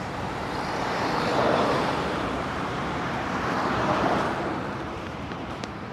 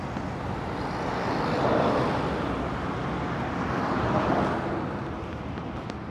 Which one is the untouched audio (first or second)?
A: second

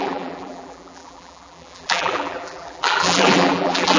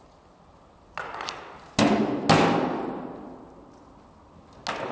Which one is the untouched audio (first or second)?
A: second